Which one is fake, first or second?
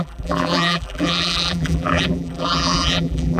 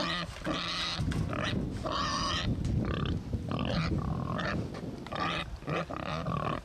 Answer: first